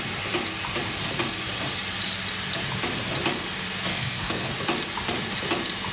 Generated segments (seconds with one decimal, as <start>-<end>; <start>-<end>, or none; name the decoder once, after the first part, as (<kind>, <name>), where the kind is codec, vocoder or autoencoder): 3.9-4.5 (codec, SNAC)

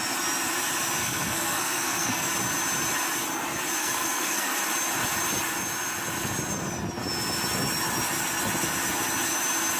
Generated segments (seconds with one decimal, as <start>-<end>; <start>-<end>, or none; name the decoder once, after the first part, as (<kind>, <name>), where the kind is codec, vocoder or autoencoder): 1.0-2.3 (codec, SNAC); 3.8-4.6